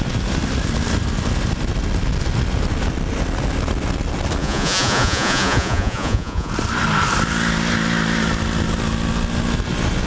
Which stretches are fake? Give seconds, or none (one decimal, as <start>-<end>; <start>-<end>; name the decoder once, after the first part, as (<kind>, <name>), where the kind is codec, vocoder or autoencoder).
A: 4.4-6.5 (vocoder, Vocos)